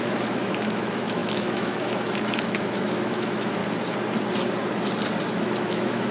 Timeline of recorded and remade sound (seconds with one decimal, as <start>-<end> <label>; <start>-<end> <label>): 0.0-3.6 remade; 3.6-5.2 recorded; 5.2-6.1 remade